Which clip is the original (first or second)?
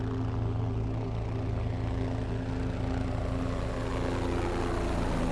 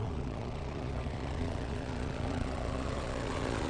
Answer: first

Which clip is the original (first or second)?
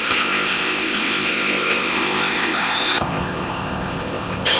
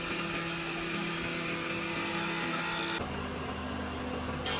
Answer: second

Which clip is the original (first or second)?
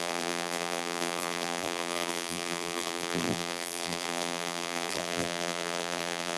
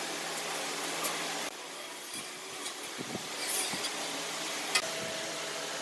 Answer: second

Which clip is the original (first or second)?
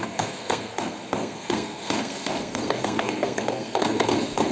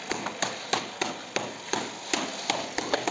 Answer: second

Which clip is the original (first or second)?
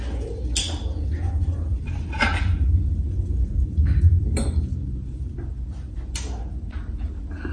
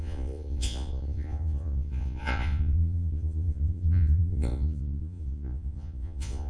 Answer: first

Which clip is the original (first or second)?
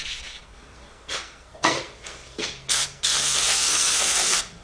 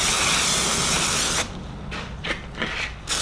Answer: second